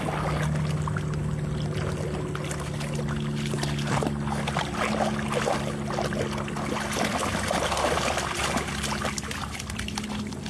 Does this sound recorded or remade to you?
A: recorded